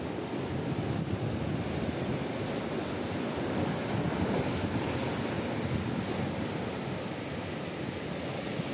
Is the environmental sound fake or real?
real